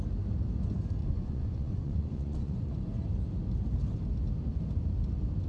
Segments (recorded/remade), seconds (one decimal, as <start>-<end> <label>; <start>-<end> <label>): 0.0-1.0 recorded; 1.0-2.7 remade; 2.7-5.5 recorded